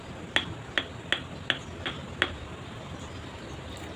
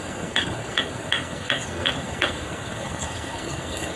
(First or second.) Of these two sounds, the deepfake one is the second